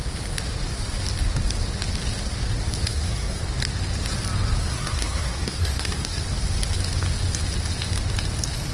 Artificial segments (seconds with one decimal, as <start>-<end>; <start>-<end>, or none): 2.9-3.4; 4.6-6.2